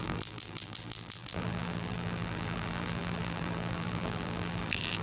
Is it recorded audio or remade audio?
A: remade